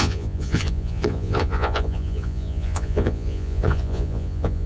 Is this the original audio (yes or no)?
no